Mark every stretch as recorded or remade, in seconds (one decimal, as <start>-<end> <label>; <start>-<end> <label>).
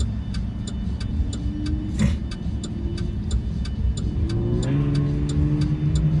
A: 0.0-6.2 recorded